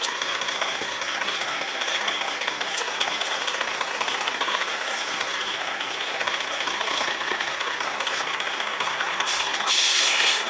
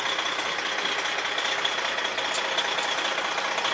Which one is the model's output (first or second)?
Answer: first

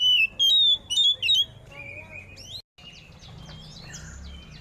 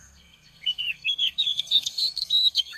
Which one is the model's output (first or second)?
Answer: second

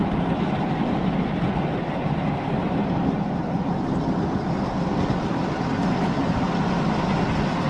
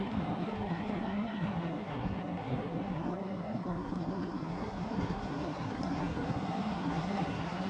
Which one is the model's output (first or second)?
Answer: second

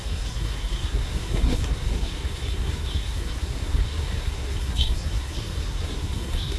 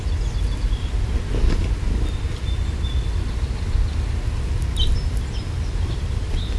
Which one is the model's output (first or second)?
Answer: first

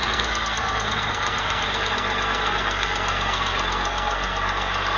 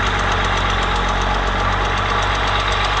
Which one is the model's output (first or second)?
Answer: first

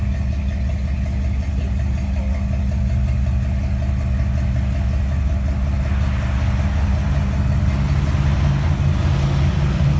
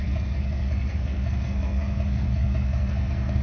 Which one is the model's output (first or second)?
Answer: second